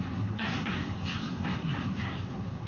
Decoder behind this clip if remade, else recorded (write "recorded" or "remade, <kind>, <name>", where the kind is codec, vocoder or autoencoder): remade, codec, SNAC